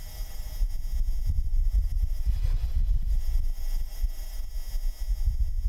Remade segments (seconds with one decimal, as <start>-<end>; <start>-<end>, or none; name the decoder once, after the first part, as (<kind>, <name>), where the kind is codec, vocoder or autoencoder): 0.0-0.7 (vocoder, BigVGAN v2); 1.5-4.5